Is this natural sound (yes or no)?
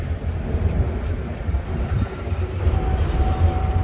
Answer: no